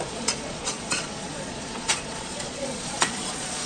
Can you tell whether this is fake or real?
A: fake